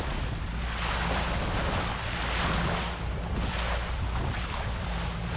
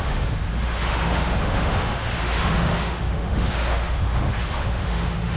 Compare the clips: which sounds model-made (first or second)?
second